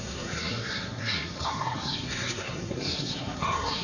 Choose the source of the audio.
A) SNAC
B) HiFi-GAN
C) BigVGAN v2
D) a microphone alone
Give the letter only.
A